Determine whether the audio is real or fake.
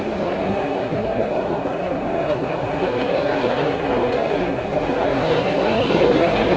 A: fake